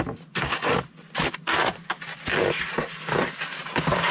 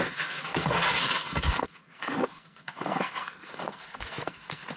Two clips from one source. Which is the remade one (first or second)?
second